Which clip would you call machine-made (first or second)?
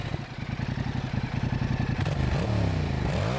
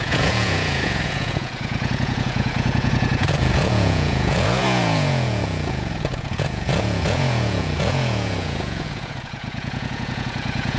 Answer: second